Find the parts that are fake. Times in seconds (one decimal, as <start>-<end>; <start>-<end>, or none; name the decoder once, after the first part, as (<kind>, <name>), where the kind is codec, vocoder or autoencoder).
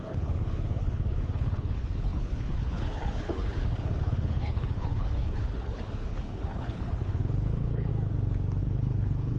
0.0-7.9 (codec, HILCodec); 8.6-9.4